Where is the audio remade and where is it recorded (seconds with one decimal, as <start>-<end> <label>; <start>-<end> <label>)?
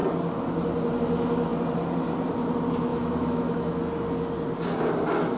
0.0-2.9 recorded; 2.9-3.8 remade; 3.8-5.4 recorded